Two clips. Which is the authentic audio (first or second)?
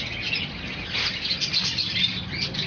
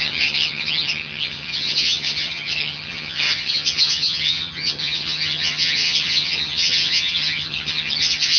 first